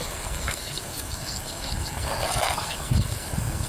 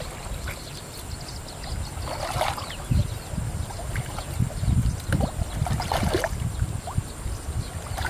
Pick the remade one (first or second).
first